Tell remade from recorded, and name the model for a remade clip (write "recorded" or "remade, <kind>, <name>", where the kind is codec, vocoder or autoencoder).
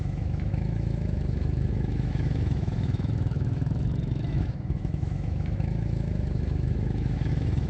remade, autoencoder, DAC-VAE